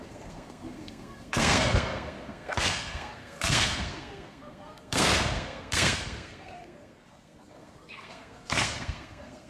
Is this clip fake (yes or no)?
yes